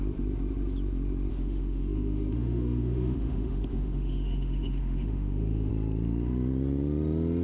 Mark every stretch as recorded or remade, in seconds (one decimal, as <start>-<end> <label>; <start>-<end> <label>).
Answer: 0.0-1.3 recorded; 1.3-5.7 remade; 5.7-7.4 recorded